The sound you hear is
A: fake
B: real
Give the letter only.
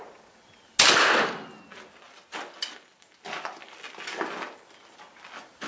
B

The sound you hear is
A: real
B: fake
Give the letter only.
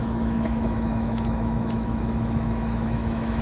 B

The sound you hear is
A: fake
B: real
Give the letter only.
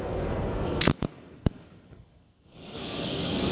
A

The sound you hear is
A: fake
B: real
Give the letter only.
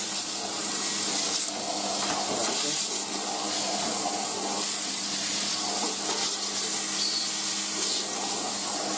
B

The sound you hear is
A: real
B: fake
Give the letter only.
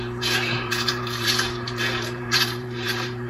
B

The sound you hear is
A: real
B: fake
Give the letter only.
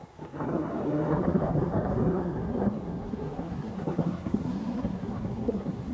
B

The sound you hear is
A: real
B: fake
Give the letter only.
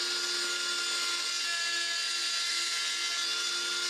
A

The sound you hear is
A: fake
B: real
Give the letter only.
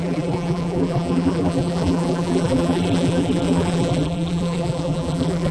A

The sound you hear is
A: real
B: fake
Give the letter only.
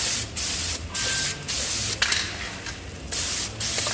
A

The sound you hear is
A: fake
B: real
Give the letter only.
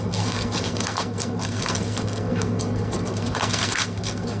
A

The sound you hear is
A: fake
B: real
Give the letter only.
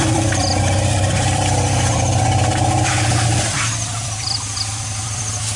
A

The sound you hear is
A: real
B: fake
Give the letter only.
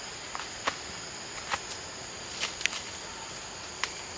A